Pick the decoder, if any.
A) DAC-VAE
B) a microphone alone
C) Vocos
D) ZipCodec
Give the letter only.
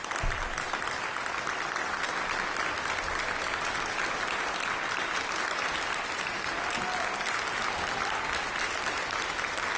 B